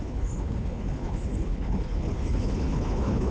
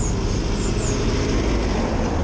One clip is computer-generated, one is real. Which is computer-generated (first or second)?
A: first